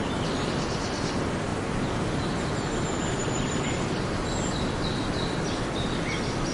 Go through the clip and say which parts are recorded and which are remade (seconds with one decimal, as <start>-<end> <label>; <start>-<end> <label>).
0.0-6.5 recorded